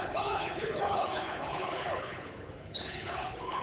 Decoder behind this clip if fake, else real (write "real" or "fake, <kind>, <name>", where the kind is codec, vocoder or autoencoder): fake, codec, HILCodec